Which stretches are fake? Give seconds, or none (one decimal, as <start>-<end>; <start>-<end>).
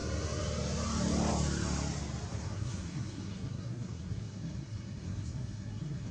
2.3-6.1